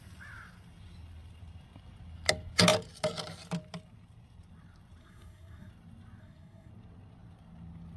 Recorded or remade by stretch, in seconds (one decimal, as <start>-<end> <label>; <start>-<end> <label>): 0.0-5.0 recorded; 5.0-5.7 remade; 5.7-6.2 recorded; 6.2-6.7 remade; 6.7-8.0 recorded